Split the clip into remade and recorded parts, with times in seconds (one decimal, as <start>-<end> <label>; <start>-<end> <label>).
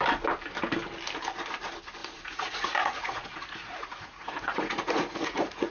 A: 0.0-2.0 recorded; 2.0-5.7 remade